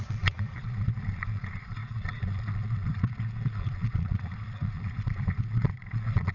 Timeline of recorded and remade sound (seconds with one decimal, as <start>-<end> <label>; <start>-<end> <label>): 0.0-6.3 remade